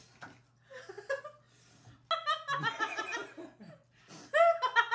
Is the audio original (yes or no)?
yes